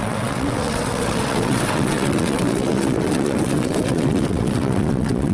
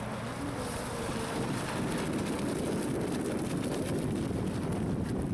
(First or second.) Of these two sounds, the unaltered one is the second